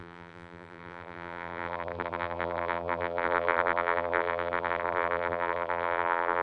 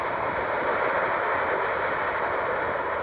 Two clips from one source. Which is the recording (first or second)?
second